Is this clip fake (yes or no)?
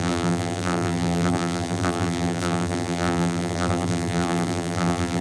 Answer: yes